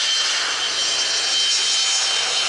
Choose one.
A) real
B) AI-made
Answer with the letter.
A